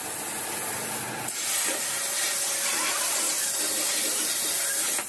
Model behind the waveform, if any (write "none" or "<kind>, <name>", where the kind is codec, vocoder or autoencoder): none